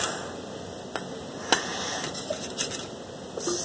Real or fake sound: real